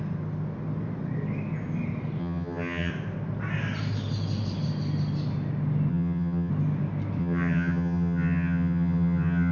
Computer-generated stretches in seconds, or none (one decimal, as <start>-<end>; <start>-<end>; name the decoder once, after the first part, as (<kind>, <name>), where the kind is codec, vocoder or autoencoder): 2.2-2.9 (vocoder, HiFi-GAN); 5.9-6.5; 7.2-9.5